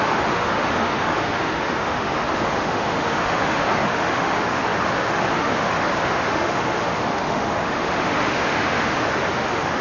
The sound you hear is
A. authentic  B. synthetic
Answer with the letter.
B